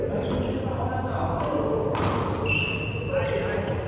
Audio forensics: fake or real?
real